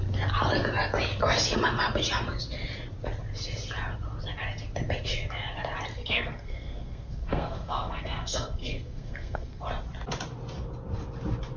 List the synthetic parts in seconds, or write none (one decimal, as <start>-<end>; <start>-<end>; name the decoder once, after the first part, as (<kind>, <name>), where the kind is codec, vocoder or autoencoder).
5.9-9.6 (codec, SNAC)